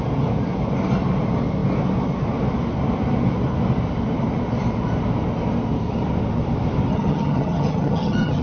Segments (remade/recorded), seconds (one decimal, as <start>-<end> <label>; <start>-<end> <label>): 0.0-6.9 recorded; 6.9-8.4 remade

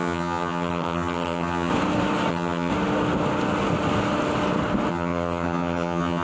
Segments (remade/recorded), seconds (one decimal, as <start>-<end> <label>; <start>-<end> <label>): 0.0-1.7 remade; 1.7-2.3 recorded; 2.3-2.7 remade; 2.7-4.9 recorded; 4.9-6.2 remade

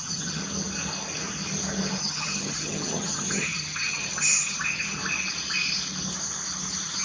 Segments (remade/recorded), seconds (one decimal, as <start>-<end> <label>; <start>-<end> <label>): 0.0-0.4 remade; 0.4-2.0 recorded; 2.0-5.0 remade; 5.0-7.0 recorded

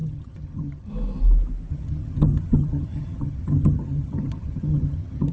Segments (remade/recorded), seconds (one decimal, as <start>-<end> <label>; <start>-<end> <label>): 0.0-0.9 remade; 0.9-1.7 recorded; 1.7-5.3 remade